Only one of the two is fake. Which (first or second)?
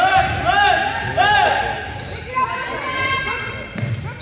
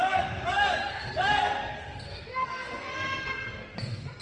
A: second